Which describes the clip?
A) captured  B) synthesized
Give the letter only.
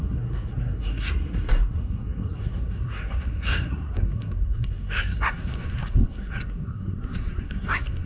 B